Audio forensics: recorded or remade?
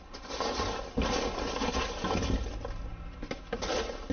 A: recorded